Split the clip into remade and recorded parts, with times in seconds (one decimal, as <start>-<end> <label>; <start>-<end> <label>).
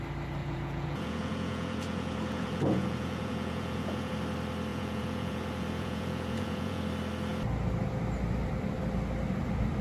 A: 0.0-0.4 recorded; 0.4-4.1 remade; 4.1-4.7 recorded; 4.7-6.8 remade; 6.8-9.8 recorded